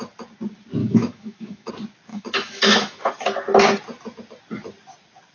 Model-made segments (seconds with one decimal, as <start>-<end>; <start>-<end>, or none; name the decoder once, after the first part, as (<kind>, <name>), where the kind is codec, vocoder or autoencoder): 0.8-1.7 (autoencoder, DAC-VAE); 2.1-3.1